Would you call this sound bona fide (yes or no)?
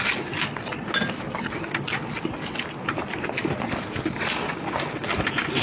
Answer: yes